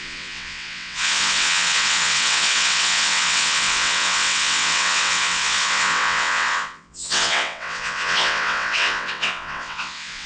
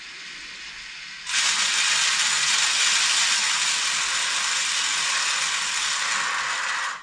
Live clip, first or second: second